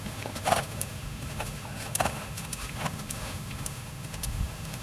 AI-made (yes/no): yes